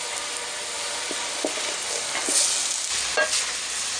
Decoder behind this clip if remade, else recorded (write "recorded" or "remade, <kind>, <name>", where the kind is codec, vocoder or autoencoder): recorded